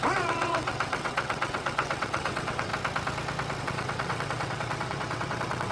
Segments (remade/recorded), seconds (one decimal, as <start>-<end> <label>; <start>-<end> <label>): 0.0-2.7 remade; 2.7-3.6 recorded; 3.6-5.7 remade